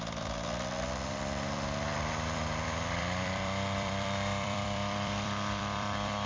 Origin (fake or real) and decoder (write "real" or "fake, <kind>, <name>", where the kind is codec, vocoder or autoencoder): fake, vocoder, BigVGAN v2